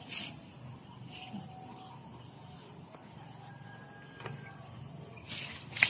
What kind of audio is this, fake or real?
real